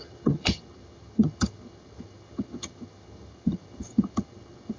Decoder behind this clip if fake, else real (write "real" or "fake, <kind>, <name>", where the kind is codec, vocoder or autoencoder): fake, vocoder, HiFi-GAN